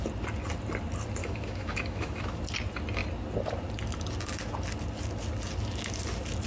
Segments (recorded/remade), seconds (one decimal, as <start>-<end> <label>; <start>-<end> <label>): 0.0-1.2 recorded; 1.2-2.4 remade; 2.4-6.5 recorded